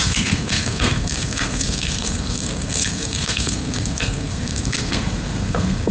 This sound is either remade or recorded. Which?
remade